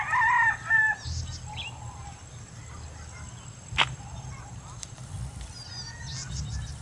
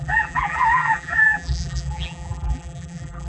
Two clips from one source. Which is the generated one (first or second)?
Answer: second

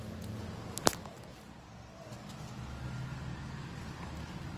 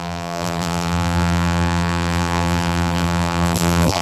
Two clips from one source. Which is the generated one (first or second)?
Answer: second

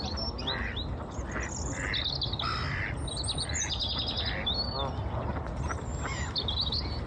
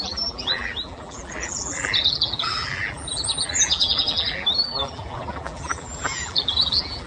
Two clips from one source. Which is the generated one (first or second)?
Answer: second